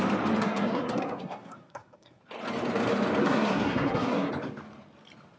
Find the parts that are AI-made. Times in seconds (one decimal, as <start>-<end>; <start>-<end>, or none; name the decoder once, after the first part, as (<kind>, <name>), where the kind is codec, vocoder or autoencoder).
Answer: 0.4-2.2 (codec, SNAC); 3.2-4.3